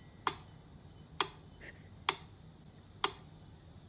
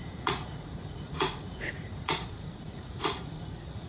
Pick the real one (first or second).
first